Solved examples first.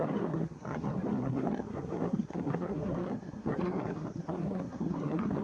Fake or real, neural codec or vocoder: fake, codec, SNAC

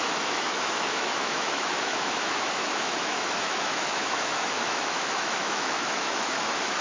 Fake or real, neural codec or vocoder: fake, autoencoder, DAC-VAE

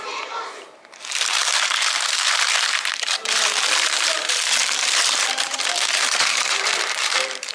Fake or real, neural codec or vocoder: fake, vocoder, BigVGAN v2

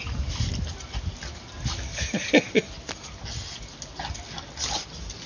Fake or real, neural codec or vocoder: real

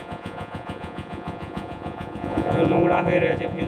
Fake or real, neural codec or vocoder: fake, vocoder, Vocos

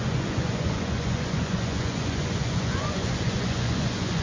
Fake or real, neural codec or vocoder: fake, vocoder, Vocos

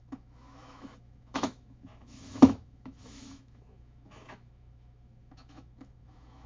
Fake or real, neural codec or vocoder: fake, autoencoder, DAC-VAE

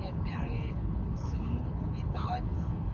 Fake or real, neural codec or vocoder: fake, codec, HILCodec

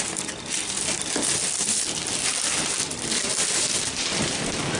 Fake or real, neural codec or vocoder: real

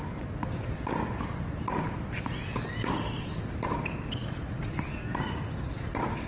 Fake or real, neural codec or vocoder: real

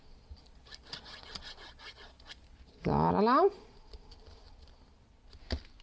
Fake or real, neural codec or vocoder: real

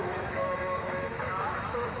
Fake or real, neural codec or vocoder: fake, autoencoder, DAC-VAE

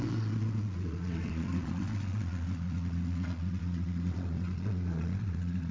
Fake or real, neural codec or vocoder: fake, vocoder, Vocos